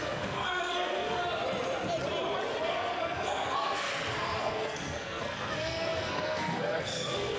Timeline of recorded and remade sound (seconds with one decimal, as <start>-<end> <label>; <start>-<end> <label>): 0.0-1.2 remade; 1.2-2.6 recorded; 2.6-3.9 remade; 3.9-4.4 recorded; 4.4-7.4 remade